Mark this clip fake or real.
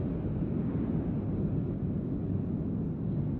real